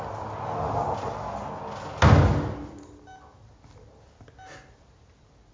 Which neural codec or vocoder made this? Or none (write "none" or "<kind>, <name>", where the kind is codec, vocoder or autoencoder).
none